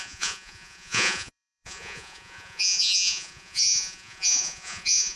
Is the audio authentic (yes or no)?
no